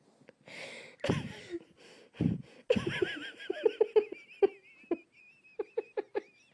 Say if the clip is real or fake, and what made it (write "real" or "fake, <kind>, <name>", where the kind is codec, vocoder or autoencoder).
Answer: real